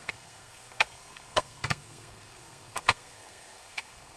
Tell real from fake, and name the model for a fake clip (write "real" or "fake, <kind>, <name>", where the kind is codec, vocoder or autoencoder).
fake, codec, SNAC